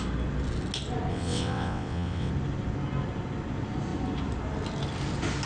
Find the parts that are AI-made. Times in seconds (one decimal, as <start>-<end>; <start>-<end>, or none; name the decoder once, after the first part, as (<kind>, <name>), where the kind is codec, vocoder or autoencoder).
1.1-2.3 (vocoder, WaveNeXt)

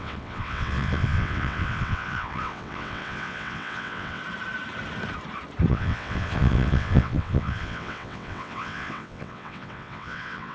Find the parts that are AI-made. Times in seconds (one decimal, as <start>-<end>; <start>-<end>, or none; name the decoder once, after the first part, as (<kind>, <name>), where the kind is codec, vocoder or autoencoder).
0.0-4.2 (vocoder, WaveNeXt); 5.7-10.5

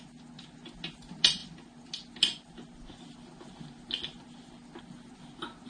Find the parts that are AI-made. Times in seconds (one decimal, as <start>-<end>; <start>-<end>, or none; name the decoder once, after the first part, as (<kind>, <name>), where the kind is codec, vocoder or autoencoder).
none

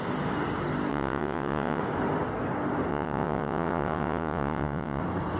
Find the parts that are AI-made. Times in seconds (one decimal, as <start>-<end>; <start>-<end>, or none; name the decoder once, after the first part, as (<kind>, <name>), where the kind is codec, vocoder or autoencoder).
0.9-1.8 (vocoder, WaveNeXt); 2.9-5.0

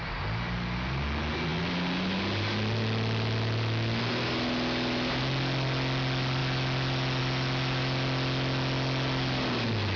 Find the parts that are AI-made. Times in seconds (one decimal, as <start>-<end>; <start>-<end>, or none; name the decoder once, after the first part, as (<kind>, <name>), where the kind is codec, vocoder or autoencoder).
none

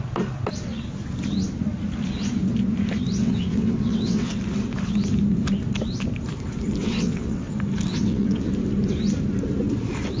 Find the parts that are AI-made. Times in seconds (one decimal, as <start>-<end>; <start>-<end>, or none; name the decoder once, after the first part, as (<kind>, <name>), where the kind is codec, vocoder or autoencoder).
3.2-4.4 (vocoder, WaveNeXt); 6.8-7.5; 7.9-8.5

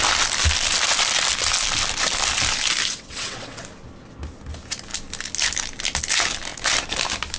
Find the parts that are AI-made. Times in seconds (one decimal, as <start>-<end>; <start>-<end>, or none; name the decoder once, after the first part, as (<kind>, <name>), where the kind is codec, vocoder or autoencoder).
2.9-3.6 (vocoder, WaveNeXt)